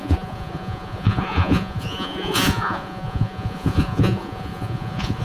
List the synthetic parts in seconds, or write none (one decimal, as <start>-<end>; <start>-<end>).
0.0-5.2